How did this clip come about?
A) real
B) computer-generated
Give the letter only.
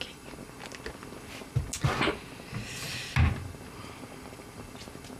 A